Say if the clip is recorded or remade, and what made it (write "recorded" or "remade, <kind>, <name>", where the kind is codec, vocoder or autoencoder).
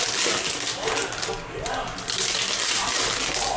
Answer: recorded